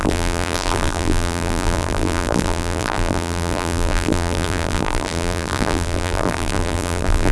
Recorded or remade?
remade